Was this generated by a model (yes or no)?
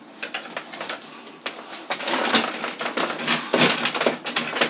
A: no